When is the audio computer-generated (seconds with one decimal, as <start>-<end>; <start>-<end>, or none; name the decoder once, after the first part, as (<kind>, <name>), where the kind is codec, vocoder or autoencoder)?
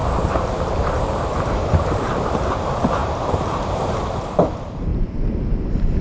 0.0-6.0 (vocoder, BigVGAN v2)